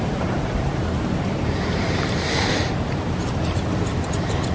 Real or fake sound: real